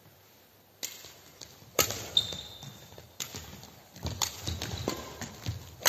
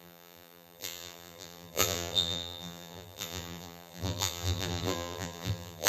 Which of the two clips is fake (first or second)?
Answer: second